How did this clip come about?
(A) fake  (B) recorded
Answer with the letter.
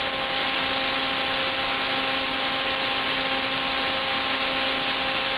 B